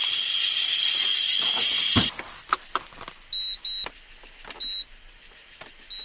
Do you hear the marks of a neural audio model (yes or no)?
no